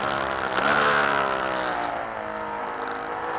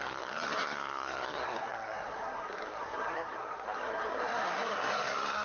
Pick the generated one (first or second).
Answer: second